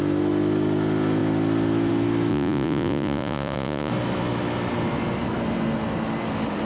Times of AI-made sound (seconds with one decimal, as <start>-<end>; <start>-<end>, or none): 2.3-3.9